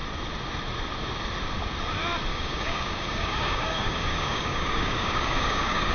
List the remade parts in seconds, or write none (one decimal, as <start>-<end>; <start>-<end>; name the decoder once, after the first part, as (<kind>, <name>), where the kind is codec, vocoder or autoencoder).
2.3-5.9 (codec, DAC)

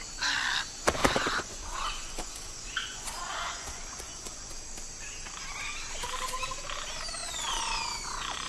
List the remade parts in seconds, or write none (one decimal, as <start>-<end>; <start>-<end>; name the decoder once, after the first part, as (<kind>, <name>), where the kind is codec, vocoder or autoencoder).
1.0-4.5 (vocoder, Vocos); 7.2-8.5

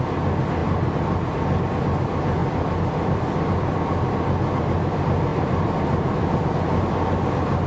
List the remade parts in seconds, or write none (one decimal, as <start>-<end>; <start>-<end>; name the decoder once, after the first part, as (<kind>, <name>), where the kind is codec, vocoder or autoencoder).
2.4-4.1 (vocoder, BigVGAN v2); 5.3-6.8

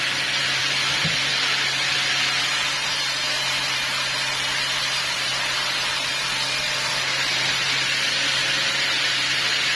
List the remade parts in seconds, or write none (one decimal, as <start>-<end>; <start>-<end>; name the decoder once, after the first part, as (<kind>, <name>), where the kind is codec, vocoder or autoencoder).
none

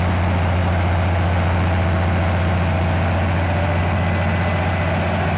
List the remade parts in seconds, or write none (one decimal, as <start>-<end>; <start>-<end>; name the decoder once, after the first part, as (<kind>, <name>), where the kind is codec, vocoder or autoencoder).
none

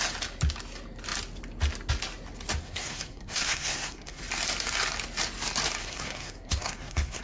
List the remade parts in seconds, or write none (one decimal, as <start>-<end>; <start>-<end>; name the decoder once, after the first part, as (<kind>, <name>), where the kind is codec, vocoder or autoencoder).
2.6-4.2 (codec, SNAC); 5.8-7.2

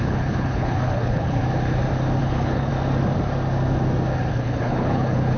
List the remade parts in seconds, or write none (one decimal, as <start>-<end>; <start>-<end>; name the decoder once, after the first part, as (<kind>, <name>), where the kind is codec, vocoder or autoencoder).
0.0-1.4 (codec, HILCodec); 2.2-2.7; 4.3-5.4